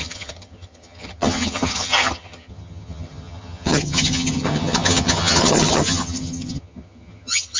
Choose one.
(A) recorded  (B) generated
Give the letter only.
B